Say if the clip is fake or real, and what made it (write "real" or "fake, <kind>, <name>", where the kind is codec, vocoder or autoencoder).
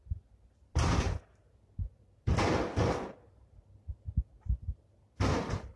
real